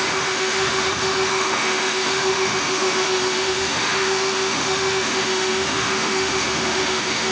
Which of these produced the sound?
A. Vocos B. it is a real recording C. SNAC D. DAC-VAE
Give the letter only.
D